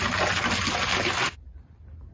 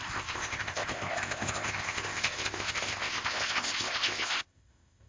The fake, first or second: second